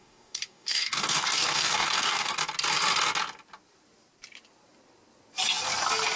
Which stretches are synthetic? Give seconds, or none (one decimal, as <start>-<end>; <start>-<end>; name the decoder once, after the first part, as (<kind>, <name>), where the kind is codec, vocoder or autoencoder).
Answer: 0.0-2.4 (codec, DAC)